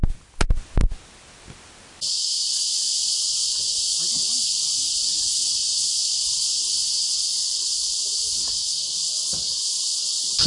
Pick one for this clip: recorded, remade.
recorded